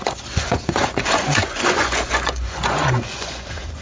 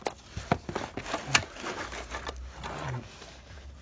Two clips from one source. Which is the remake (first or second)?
first